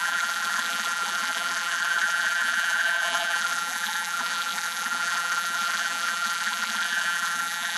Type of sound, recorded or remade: remade